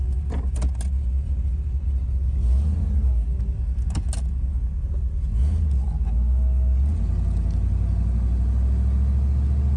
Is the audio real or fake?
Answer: real